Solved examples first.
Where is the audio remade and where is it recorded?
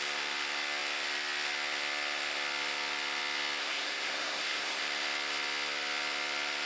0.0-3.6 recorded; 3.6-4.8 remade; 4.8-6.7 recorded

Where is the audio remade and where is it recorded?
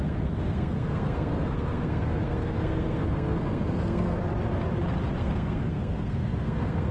0.0-4.2 remade; 4.2-5.2 recorded; 5.2-6.9 remade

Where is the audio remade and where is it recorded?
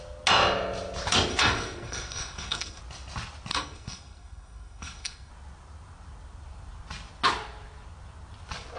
0.0-1.3 recorded; 1.3-2.8 remade; 2.8-3.5 recorded; 3.5-5.3 remade; 5.3-8.8 recorded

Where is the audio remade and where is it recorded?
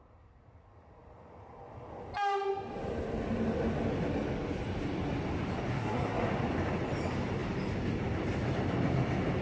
0.0-5.7 recorded; 5.7-6.3 remade; 6.3-9.4 recorded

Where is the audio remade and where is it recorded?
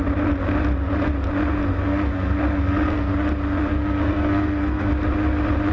0.0-1.7 recorded; 1.7-3.1 remade; 3.1-3.7 recorded; 3.7-4.9 remade; 4.9-5.7 recorded